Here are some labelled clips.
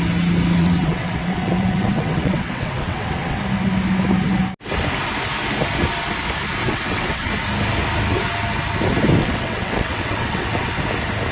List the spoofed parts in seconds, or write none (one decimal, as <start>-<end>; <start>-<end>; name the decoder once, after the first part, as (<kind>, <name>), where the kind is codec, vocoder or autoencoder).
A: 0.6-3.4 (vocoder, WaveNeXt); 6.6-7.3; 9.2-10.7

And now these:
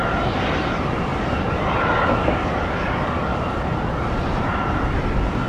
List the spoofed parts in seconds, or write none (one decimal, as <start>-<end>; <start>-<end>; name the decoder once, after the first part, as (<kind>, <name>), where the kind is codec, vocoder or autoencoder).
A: 0.0-1.1 (vocoder, BigVGAN v2); 4.4-5.5

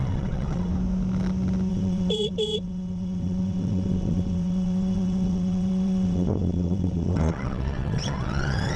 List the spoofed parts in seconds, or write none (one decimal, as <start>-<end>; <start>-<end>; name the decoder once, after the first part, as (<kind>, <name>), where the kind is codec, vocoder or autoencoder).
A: 0.0-0.7 (vocoder, WaveNeXt); 1.7-8.8

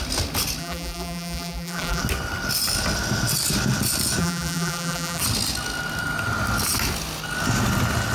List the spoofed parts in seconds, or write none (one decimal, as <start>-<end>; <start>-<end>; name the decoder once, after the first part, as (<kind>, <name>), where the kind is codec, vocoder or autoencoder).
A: 0.6-2.0 (vocoder, BigVGAN v2); 4.2-5.2

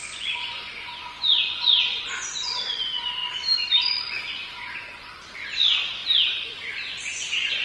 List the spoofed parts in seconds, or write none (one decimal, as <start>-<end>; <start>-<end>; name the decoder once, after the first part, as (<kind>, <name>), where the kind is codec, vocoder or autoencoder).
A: 0.0-3.2 (vocoder, Vocos); 3.8-7.6

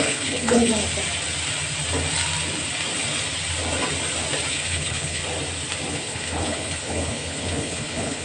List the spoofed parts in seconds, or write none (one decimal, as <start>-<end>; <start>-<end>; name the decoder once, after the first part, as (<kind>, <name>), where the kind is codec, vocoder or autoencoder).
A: 0.0-0.7 (codec, HILCodec); 4.5-5.2; 5.9-8.2